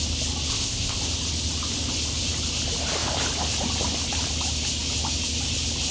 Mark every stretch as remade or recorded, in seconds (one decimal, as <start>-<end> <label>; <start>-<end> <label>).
0.0-0.5 recorded; 0.5-1.0 remade; 1.0-5.9 recorded

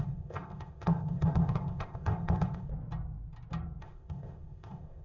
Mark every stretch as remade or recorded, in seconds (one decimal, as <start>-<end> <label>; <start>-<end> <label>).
0.0-2.7 remade; 2.7-3.8 recorded; 3.8-5.0 remade

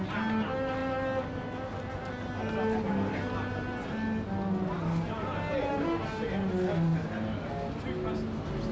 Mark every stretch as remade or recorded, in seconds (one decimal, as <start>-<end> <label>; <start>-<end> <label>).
0.0-8.7 recorded

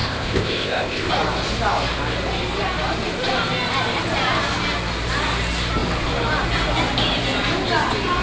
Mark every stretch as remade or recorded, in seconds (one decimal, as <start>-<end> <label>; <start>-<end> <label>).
0.0-1.1 remade; 1.1-8.2 recorded

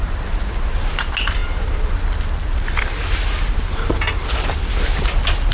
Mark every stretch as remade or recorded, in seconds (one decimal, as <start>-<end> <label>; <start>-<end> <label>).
0.0-5.5 recorded

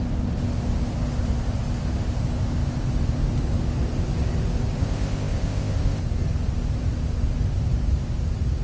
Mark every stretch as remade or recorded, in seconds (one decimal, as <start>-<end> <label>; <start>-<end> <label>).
0.0-4.8 recorded; 4.8-6.0 remade; 6.0-8.6 recorded